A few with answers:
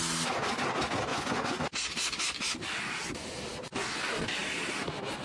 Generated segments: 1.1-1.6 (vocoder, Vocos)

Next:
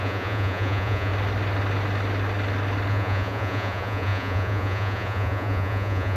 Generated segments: 0.0-1.1 (vocoder, Vocos); 2.9-6.2

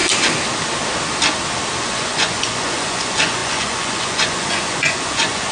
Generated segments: 1.8-5.5 (vocoder, Vocos)

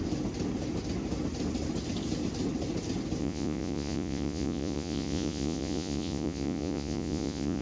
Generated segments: 3.2-7.6 (vocoder, Vocos)